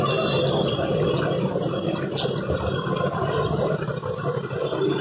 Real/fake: real